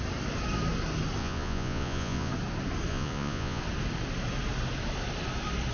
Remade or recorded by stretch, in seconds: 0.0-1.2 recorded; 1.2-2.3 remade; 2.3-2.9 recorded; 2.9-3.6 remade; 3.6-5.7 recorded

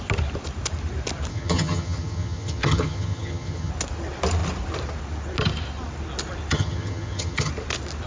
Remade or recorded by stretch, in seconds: 0.0-1.3 recorded; 1.3-3.7 remade; 3.7-6.5 recorded; 6.5-7.5 remade; 7.5-8.1 recorded

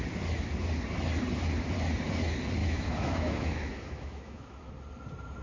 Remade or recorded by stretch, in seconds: 0.0-2.6 recorded; 2.6-4.7 remade; 4.7-5.4 recorded

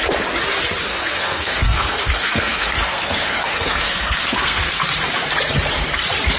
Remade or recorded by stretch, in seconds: 0.0-0.9 recorded; 0.9-4.7 remade; 4.7-6.4 recorded

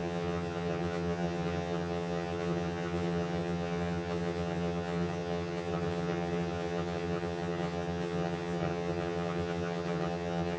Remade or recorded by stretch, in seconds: 0.0-10.6 remade

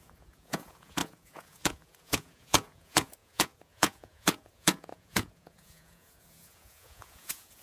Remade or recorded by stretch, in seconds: 0.0-7.6 remade